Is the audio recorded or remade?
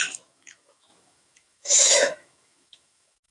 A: remade